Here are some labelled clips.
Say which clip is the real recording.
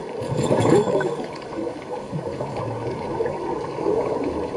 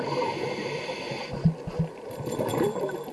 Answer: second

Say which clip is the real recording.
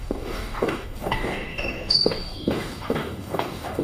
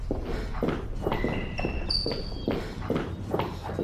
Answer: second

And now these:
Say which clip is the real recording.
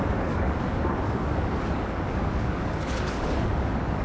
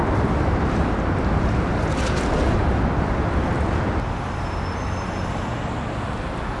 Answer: second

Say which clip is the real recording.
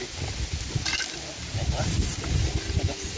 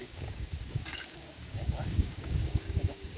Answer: first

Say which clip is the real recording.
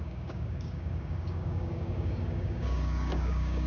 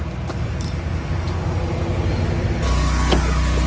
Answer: second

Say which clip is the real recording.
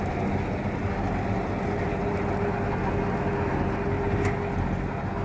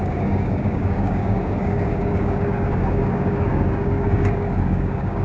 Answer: first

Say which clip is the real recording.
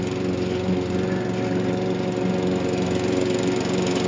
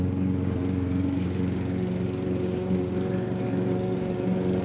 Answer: first